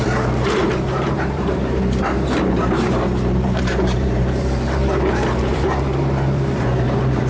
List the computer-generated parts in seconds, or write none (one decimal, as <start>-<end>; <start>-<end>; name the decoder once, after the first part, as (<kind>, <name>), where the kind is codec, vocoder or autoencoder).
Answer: 0.0-4.8 (vocoder, BigVGAN v2); 5.4-7.3